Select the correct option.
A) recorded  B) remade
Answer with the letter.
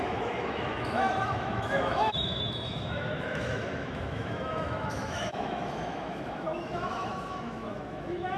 B